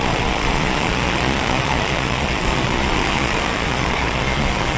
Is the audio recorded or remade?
remade